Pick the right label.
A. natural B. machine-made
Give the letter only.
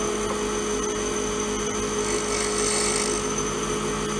A